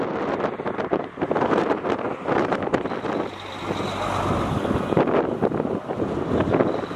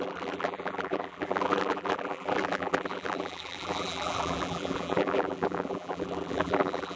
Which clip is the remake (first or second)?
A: second